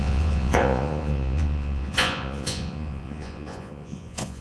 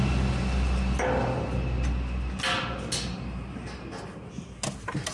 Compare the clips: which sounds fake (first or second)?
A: first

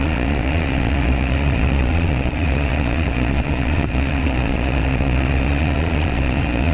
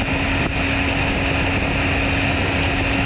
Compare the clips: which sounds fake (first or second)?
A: first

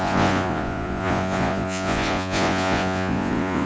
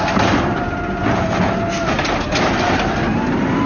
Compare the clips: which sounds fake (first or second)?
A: first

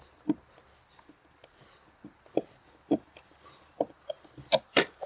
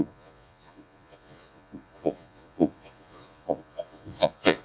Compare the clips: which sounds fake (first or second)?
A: second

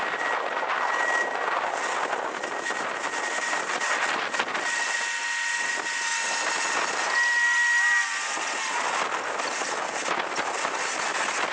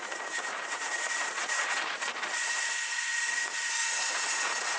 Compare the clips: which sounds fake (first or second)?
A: second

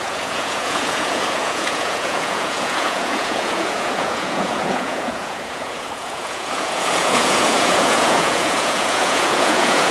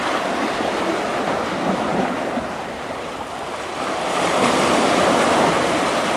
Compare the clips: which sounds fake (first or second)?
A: first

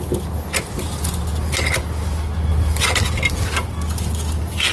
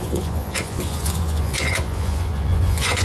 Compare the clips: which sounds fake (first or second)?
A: second